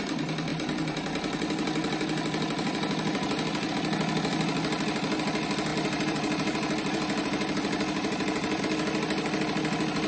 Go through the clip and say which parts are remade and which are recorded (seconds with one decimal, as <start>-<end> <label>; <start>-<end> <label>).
0.0-5.7 recorded; 5.7-8.6 remade; 8.6-10.1 recorded